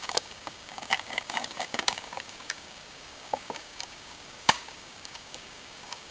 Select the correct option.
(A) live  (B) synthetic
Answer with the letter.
B